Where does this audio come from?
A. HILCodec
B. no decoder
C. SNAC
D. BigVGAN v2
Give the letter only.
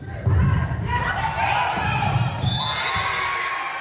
B